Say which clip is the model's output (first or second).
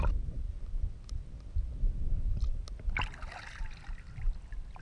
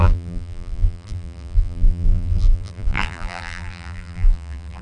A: second